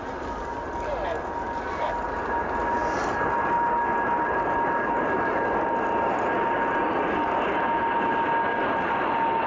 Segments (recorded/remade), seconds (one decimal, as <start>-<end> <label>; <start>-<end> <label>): 0.0-9.5 recorded